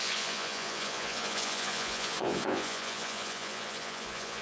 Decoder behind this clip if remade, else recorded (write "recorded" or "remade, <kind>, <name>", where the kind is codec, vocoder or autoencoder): remade, vocoder, Vocos